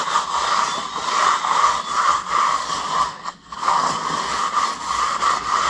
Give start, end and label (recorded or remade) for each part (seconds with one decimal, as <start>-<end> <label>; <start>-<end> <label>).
0.0-3.1 recorded; 3.1-3.9 remade; 3.9-5.7 recorded